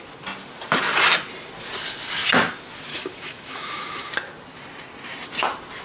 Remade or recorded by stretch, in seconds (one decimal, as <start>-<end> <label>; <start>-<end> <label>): 0.0-2.9 recorded; 2.9-4.1 remade; 4.1-5.8 recorded